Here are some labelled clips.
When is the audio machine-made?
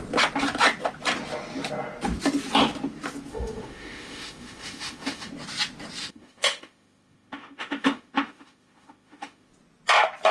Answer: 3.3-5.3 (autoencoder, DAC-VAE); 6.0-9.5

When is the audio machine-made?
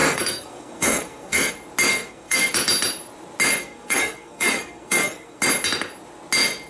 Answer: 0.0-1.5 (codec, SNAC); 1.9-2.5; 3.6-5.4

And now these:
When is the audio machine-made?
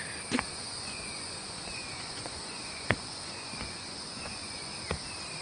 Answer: 0.5-4.7 (vocoder, Vocos)